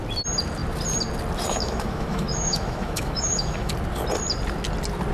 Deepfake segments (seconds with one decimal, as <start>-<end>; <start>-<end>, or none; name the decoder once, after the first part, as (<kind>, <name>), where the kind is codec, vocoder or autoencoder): 1.5-3.7 (autoencoder, DAC-VAE)